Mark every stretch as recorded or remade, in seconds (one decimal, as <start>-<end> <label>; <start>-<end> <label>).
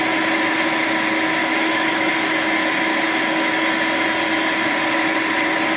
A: 0.0-1.4 recorded; 1.4-2.1 remade; 2.1-2.9 recorded; 2.9-3.7 remade; 3.7-5.8 recorded